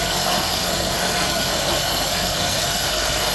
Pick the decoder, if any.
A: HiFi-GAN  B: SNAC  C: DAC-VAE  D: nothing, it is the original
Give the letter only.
B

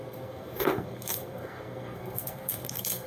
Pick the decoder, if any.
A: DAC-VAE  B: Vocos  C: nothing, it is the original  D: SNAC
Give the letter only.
D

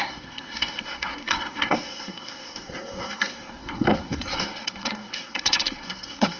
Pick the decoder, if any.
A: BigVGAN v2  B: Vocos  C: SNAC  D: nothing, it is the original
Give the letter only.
C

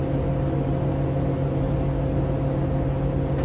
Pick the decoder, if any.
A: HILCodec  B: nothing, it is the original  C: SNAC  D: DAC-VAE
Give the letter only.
B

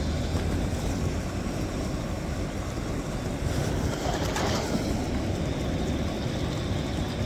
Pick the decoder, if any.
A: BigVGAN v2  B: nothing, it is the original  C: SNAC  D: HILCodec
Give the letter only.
B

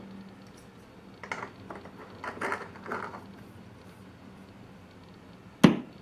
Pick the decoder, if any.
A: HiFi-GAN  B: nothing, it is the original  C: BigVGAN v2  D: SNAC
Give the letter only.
B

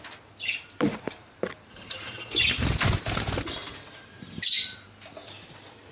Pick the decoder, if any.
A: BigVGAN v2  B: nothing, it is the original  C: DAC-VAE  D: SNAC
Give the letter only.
B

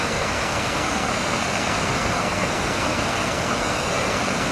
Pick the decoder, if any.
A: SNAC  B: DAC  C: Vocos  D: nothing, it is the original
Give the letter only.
A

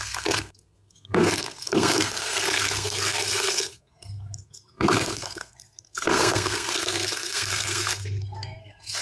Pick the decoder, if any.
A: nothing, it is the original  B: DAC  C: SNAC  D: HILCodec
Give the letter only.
C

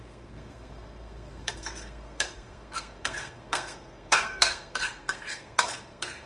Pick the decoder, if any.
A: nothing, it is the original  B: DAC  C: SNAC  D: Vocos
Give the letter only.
C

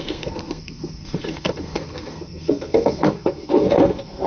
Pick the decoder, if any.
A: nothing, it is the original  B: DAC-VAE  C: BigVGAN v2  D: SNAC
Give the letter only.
D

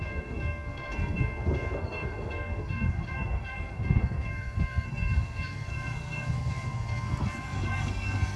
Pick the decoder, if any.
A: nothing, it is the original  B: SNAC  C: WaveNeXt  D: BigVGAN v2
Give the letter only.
B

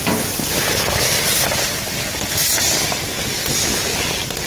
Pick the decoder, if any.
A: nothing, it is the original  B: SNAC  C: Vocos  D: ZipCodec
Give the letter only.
A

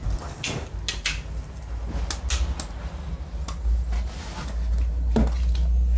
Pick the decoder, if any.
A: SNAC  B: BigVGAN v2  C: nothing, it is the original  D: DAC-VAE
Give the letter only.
C